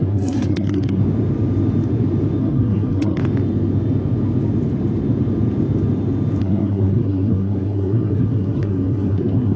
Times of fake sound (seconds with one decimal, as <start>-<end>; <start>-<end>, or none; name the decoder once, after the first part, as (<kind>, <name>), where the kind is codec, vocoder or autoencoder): 0.0-1.0 (codec, SNAC); 2.4-3.2; 6.4-9.6